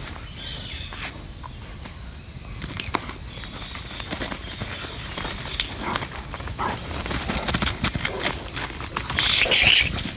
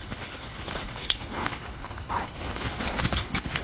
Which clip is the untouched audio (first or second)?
first